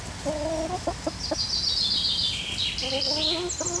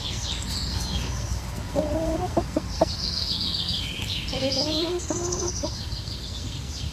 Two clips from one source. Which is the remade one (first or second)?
second